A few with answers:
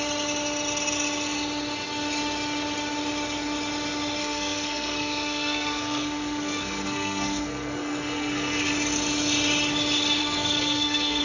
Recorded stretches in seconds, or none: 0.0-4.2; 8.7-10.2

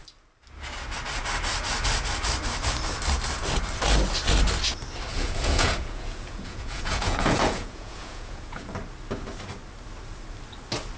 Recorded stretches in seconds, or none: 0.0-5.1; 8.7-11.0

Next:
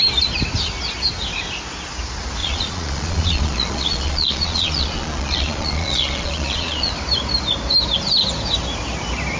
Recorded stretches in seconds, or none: 0.0-2.4; 6.9-9.4